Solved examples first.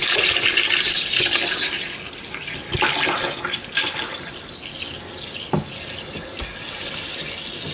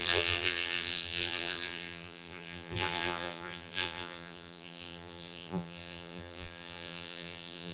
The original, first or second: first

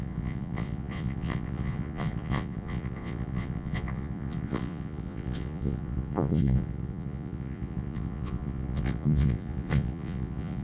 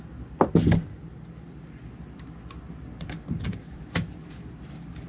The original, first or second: second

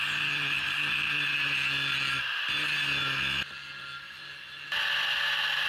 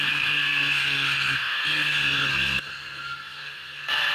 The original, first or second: first